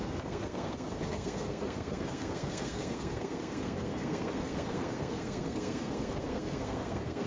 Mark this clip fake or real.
fake